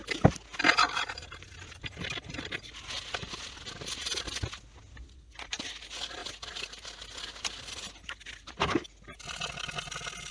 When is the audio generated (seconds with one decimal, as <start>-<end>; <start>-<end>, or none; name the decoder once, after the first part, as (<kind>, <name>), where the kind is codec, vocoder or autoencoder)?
none